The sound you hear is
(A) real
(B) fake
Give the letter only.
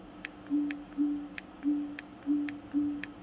A